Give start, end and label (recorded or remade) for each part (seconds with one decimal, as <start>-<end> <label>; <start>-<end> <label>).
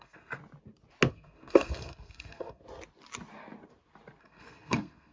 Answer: 0.0-0.4 remade; 0.4-1.1 recorded; 1.1-2.6 remade; 2.6-4.2 recorded; 4.2-5.1 remade